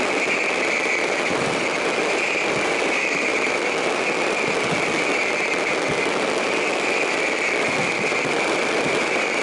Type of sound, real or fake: real